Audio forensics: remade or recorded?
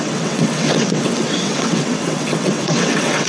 remade